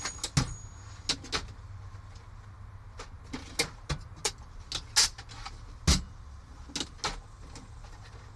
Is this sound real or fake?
real